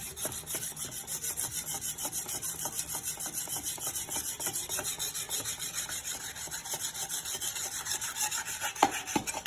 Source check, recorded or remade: recorded